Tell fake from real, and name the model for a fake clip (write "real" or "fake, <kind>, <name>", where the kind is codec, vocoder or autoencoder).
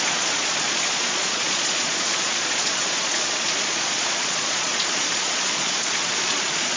fake, vocoder, Vocos